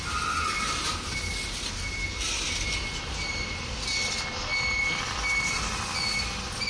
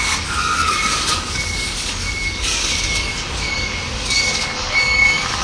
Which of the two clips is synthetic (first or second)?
second